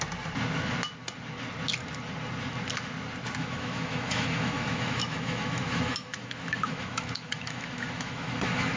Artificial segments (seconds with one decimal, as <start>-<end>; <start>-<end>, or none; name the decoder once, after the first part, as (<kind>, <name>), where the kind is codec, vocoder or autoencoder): 3.4-8.8 (autoencoder, DAC-VAE)